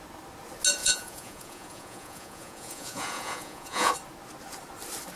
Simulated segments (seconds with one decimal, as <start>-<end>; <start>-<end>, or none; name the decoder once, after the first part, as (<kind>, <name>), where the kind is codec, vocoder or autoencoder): 0.8-3.9 (vocoder, Vocos)